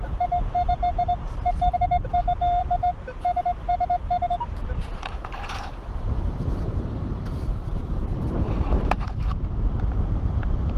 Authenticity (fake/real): fake